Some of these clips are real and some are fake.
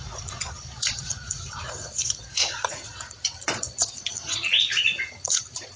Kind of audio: fake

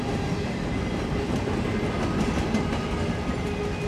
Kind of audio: real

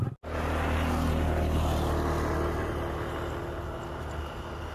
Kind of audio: real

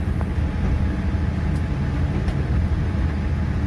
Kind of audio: real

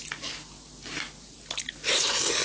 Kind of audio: real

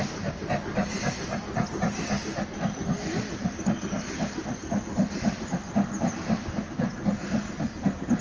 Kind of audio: real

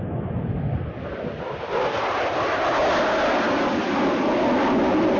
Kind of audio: real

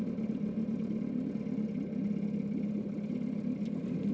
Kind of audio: real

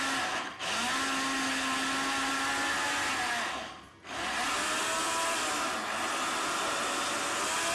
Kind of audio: real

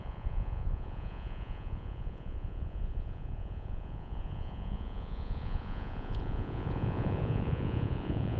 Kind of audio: fake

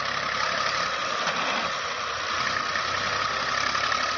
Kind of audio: real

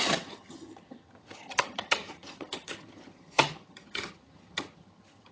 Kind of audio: fake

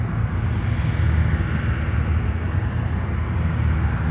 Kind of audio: real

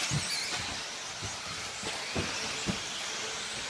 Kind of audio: real